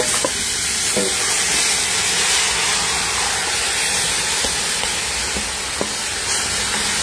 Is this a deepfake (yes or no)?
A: no